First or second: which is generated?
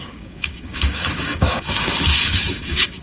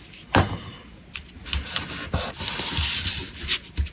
first